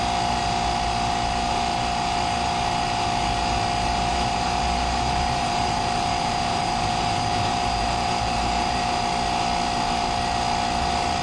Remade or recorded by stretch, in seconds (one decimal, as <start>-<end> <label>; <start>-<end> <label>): 0.0-4.1 recorded; 4.1-9.0 remade; 9.0-11.2 recorded